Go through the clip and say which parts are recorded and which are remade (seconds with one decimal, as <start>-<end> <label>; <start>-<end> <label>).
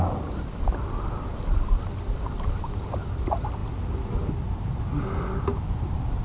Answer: 0.0-6.2 recorded